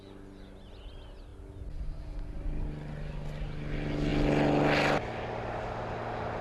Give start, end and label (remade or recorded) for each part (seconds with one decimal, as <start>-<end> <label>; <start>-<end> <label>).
0.0-6.4 recorded